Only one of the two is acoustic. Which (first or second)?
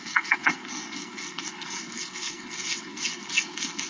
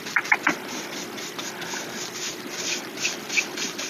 second